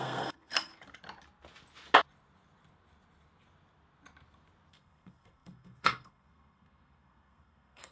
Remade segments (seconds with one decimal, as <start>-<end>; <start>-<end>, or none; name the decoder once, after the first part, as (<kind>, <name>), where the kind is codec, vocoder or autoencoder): 0.0-0.7 (codec, SNAC); 4.7-7.9